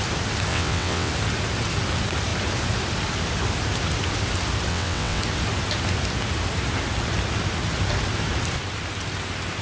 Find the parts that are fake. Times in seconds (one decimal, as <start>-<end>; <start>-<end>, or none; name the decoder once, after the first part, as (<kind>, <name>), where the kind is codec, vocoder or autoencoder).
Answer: 0.5-1.1 (vocoder, WaveNeXt); 4.7-5.2

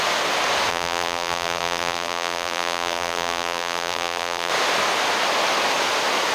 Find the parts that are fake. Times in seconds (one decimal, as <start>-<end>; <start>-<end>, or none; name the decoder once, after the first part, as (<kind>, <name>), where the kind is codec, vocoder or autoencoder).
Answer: 0.7-4.5 (vocoder, BigVGAN v2)

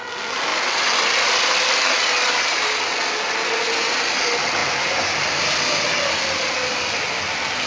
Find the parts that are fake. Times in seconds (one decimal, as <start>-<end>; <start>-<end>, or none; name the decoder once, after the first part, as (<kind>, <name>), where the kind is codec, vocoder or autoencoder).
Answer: none

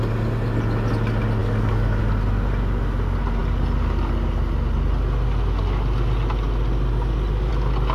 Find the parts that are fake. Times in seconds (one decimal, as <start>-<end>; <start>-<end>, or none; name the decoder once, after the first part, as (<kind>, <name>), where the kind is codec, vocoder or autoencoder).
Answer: 1.4-2.0 (codec, DAC)

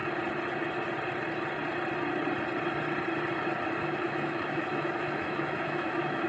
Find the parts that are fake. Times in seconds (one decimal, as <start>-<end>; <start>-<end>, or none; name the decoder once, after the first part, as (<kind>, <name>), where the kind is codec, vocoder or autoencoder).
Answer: 3.8-6.3 (autoencoder, DAC-VAE)

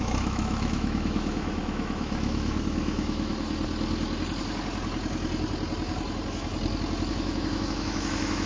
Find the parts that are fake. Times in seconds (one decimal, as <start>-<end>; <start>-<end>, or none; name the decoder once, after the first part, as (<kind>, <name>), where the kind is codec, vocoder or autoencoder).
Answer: 0.0-3.3 (autoencoder, DAC-VAE); 7.1-8.5